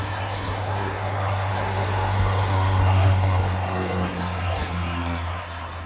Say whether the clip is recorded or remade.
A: remade